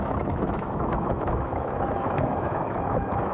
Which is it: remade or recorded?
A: remade